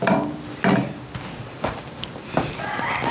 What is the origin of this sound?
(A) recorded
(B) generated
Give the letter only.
A